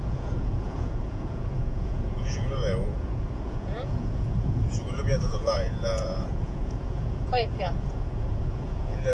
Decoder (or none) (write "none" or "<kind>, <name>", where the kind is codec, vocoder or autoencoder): vocoder, Vocos